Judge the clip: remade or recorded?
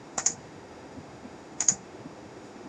remade